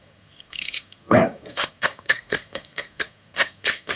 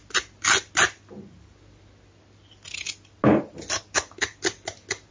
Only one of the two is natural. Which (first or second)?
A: second